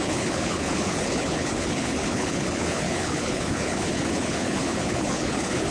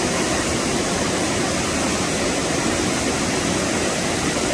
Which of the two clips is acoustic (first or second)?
second